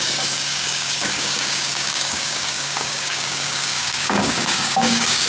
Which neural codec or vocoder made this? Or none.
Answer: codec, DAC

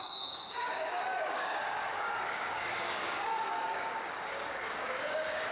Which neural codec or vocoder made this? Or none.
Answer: codec, DAC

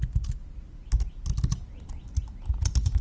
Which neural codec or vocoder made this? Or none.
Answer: none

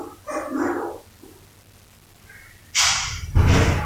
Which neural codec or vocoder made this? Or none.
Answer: none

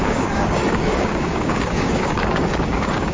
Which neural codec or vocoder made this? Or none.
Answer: codec, DAC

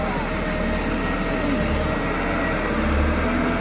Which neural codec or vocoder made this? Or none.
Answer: none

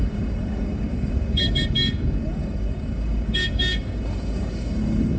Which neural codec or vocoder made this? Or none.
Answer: codec, DAC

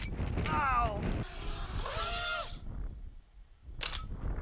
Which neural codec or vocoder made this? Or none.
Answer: none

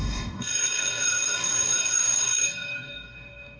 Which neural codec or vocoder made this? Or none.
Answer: codec, DAC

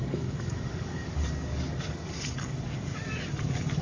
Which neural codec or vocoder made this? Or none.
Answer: codec, DAC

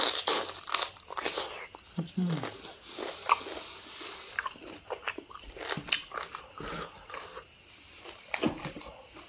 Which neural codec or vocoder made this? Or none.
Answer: none